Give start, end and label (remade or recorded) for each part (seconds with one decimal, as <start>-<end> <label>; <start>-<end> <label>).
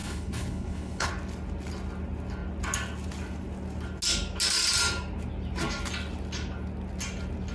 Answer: 0.0-1.1 remade; 1.1-7.5 recorded